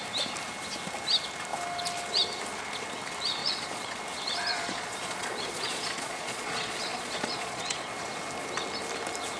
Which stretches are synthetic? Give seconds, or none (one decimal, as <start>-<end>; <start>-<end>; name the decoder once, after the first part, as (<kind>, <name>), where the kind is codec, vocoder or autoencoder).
3.4-4.0 (vocoder, Vocos); 4.5-7.9